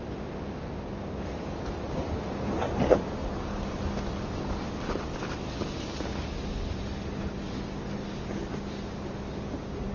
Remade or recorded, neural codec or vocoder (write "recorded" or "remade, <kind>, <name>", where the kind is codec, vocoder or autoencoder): recorded